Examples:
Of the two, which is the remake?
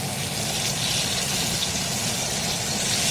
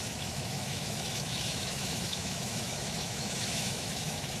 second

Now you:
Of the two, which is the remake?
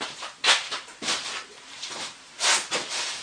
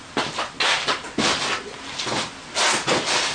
first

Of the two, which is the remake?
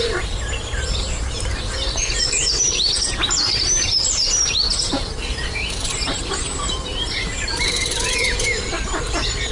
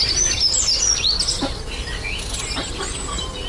first